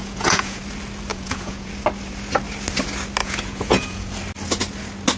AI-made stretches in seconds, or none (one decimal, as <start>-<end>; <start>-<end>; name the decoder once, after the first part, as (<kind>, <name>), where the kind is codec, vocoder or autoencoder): 0.0-0.6 (vocoder, Vocos); 1.1-1.7; 3.2-4.1